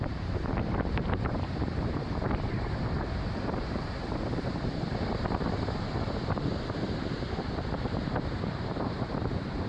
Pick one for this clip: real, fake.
fake